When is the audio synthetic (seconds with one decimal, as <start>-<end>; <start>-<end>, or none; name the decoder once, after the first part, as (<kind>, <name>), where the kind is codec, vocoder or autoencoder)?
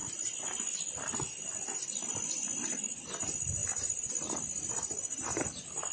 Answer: none